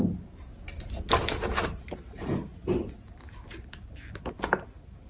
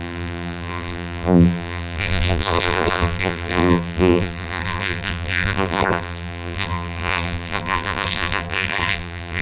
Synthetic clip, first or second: second